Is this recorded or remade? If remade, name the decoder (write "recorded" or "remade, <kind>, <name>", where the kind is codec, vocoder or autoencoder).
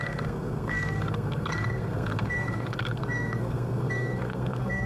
remade, codec, SNAC